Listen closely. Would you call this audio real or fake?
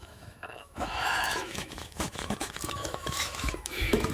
fake